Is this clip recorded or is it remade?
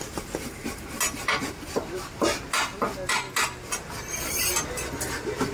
recorded